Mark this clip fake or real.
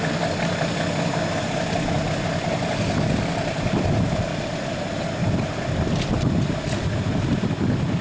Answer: real